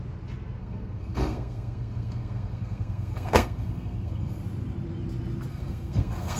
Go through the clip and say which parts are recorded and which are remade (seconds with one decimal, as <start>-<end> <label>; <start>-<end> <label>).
0.0-0.6 recorded; 0.6-4.4 remade; 4.4-5.5 recorded; 5.5-6.4 remade